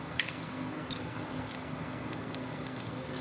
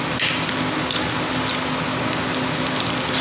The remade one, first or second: first